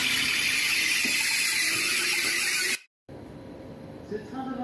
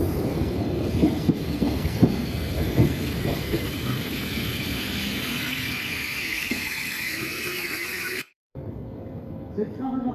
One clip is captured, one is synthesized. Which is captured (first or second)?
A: first